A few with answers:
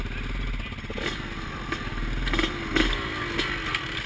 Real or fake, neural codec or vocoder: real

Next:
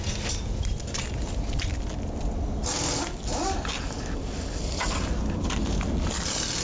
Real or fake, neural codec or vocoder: real